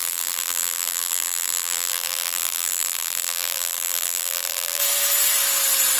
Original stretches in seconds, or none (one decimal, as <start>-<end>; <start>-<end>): 4.8-6.0